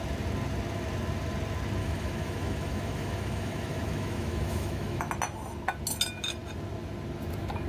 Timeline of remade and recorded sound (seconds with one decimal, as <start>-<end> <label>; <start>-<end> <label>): 0.0-1.8 recorded; 1.8-5.1 remade; 5.1-7.7 recorded